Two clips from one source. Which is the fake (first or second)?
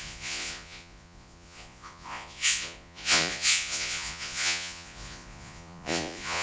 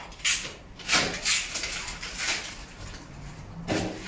first